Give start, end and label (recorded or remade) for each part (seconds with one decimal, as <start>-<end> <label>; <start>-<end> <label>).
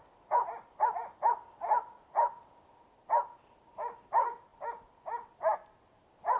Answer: 0.0-6.4 recorded